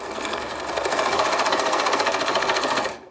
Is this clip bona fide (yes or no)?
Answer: no